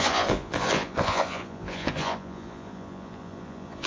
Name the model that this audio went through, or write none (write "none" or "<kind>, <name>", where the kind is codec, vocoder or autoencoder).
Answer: vocoder, Vocos